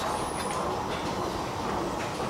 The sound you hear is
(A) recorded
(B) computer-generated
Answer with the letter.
A